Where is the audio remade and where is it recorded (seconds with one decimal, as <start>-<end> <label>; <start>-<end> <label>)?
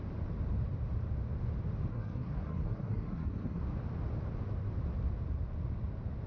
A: 0.0-1.9 recorded; 1.9-3.6 remade; 3.6-6.3 recorded